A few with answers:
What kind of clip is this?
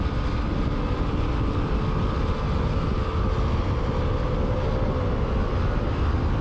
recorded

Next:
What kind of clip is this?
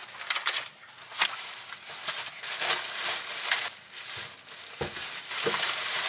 recorded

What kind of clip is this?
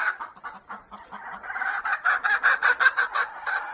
recorded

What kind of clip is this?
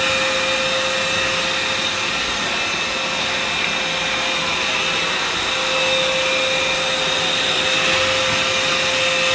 recorded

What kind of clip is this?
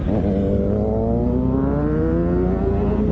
recorded